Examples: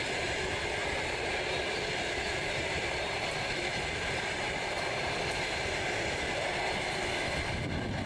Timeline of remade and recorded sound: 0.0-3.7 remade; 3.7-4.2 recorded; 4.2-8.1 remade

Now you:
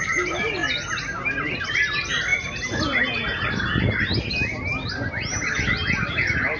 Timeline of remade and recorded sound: 0.0-0.6 remade; 0.6-1.7 recorded; 1.7-2.3 remade; 2.3-6.6 recorded

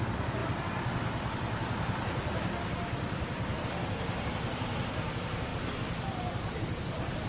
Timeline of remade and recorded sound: 0.0-7.3 recorded

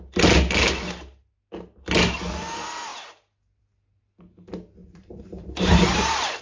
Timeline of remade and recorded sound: 0.0-4.8 recorded; 4.8-6.4 remade

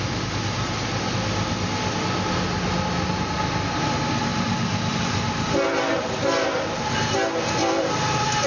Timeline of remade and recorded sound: 0.0-4.3 recorded; 4.3-5.1 remade; 5.1-7.6 recorded; 7.6-8.5 remade

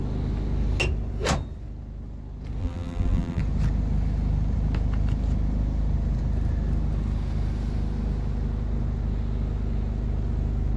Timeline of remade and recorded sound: 0.0-2.6 recorded; 2.6-3.4 remade; 3.4-10.8 recorded

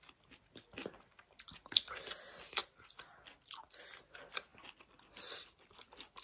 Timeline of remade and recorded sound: 0.0-6.2 recorded